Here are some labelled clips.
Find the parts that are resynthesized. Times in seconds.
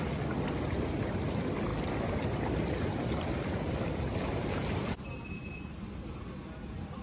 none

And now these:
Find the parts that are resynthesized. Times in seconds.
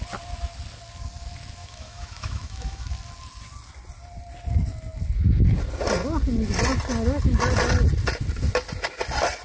1.6-2.9 (autoencoder, DAC-VAE)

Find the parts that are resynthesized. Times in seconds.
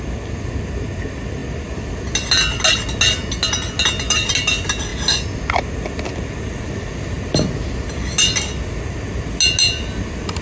none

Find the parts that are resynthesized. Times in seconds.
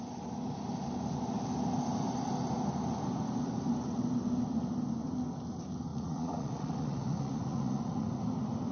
5.9-8.2 (vocoder, Vocos)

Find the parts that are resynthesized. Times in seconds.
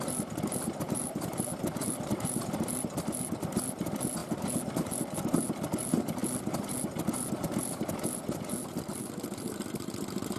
none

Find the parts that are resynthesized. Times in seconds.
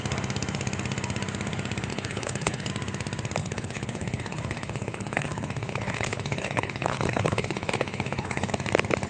1.9-2.7 (codec, HILCodec); 3.4-8.5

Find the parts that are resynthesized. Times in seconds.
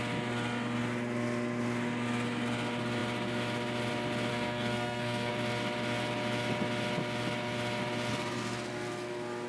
4.3-5.3 (codec, SNAC)